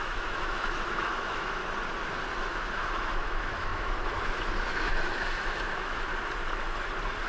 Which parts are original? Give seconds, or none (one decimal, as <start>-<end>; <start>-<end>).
1.6-2.4; 6.1-7.3

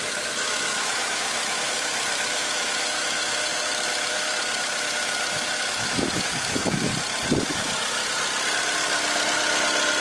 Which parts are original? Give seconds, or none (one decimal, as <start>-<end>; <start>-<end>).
6.9-7.4; 8.0-10.0

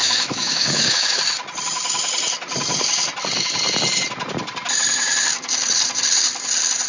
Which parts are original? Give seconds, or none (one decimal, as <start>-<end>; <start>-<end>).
1.2-6.9

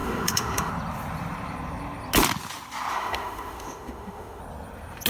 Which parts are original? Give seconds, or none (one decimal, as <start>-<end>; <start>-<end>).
0.7-2.9; 4.4-5.1

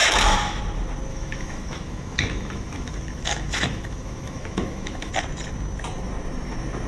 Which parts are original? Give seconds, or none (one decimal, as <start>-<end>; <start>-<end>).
0.6-1.1; 5.1-6.9

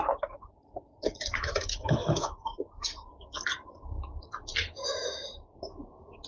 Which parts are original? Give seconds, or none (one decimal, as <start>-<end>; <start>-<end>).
0.0-0.9; 3.1-4.5; 5.3-6.3